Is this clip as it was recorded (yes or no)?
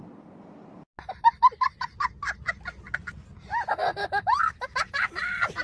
yes